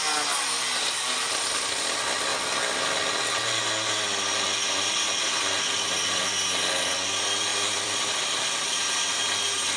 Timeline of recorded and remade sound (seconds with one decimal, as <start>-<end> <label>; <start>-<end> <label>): 0.0-2.3 recorded; 2.3-2.8 remade; 2.8-7.5 recorded; 7.5-8.8 remade; 8.8-9.8 recorded